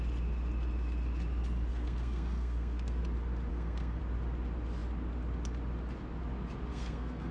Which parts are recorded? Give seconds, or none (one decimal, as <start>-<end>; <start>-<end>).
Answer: 0.0-1.7; 3.0-3.5; 4.0-6.7